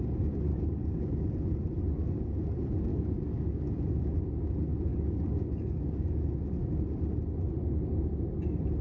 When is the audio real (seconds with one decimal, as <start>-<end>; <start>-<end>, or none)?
0.0-0.5; 1.0-2.9; 3.7-4.9; 6.2-8.8